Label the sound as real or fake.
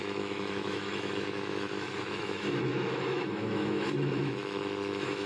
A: fake